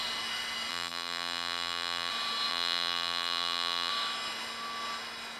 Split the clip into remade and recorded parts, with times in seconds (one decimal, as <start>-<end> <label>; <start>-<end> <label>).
0.0-0.7 recorded; 0.7-2.1 remade; 2.1-2.5 recorded; 2.5-3.9 remade; 3.9-5.4 recorded